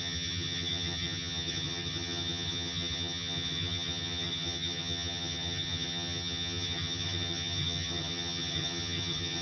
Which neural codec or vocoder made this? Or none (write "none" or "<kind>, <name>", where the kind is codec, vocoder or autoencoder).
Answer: vocoder, HiFi-GAN